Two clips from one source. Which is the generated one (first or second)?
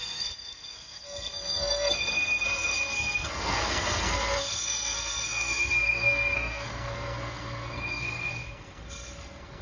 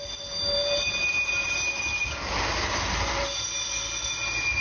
first